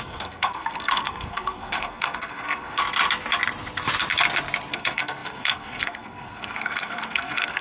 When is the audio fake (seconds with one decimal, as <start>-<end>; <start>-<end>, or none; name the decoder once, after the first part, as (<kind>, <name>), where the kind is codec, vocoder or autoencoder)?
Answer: 0.0-2.8 (codec, SNAC); 4.7-7.6

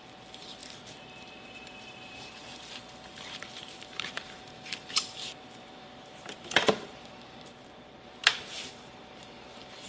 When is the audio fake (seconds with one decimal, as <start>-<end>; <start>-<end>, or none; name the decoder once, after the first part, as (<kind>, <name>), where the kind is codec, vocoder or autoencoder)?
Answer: 0.0-9.9 (vocoder, BigVGAN v2)

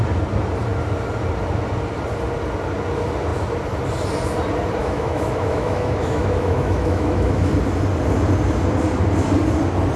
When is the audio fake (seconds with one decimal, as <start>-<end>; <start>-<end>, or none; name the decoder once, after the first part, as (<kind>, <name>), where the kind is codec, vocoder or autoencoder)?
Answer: 4.8-7.5 (autoencoder, DAC-VAE)

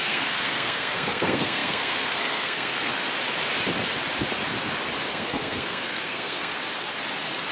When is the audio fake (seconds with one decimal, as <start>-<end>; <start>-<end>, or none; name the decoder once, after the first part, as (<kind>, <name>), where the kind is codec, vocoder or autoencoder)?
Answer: 0.0-3.0 (codec, SNAC); 5.1-6.5

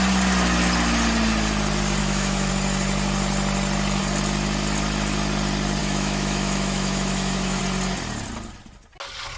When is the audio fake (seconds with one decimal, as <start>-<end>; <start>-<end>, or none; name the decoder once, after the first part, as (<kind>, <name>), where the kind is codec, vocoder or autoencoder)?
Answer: 2.0-2.5 (autoencoder, DAC-VAE); 5.8-7.6